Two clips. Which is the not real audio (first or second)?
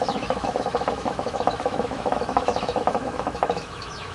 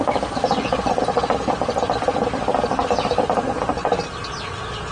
first